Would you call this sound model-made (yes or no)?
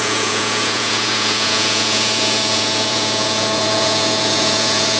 yes